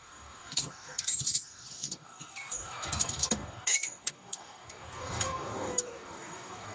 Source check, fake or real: fake